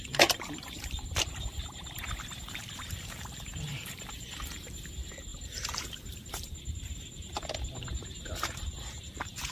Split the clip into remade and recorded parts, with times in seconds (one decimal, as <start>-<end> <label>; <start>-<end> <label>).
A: 0.0-9.5 remade